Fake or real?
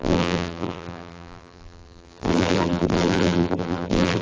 fake